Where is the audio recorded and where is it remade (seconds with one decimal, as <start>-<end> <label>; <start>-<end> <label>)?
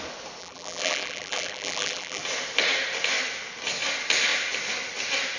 0.0-0.4 recorded; 0.4-2.2 remade; 2.2-5.4 recorded